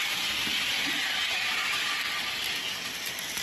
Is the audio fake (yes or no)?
no